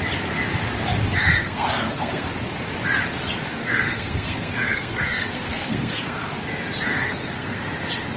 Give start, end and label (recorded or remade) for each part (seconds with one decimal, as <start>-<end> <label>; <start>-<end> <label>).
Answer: 0.0-1.2 recorded; 1.2-2.3 remade; 2.3-3.6 recorded; 3.6-6.4 remade; 6.4-6.9 recorded; 6.9-7.6 remade; 7.6-8.2 recorded